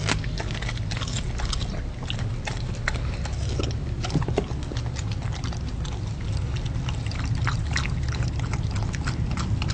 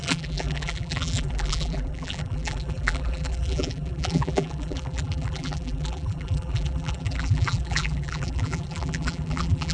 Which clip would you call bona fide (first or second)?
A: first